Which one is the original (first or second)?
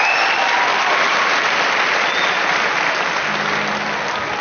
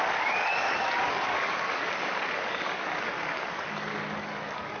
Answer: first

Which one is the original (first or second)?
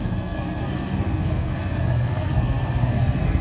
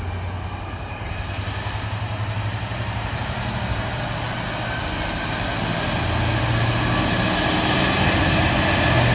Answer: second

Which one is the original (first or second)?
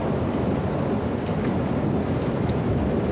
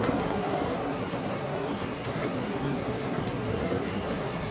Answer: first